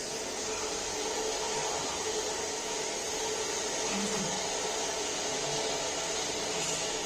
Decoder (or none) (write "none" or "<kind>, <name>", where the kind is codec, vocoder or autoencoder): none